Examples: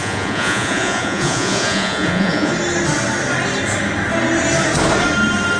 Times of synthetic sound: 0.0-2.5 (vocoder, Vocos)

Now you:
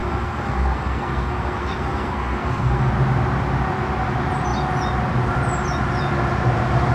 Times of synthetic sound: 0.0-2.9 (codec, SNAC)